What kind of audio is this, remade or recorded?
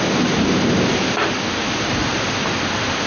recorded